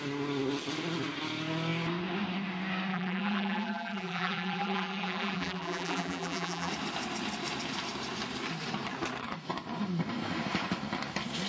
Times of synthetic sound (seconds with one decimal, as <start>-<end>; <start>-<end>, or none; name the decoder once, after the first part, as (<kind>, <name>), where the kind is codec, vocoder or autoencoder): 2.9-6.7 (vocoder, BigVGAN v2)